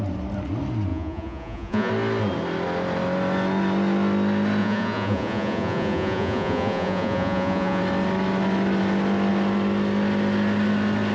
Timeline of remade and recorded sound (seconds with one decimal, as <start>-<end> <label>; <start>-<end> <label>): 0.0-0.9 recorded; 0.9-1.9 remade; 1.9-4.6 recorded; 4.6-7.8 remade; 7.8-11.1 recorded